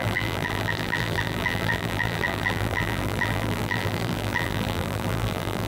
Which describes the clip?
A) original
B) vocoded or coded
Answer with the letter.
B